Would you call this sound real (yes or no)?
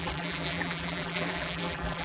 no